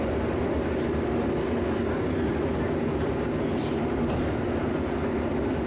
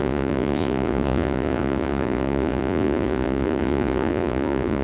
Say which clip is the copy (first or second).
second